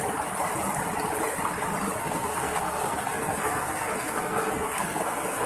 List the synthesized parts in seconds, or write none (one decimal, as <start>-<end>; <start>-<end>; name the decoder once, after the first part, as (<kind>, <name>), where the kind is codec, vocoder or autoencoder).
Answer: 2.0-5.5 (codec, SNAC)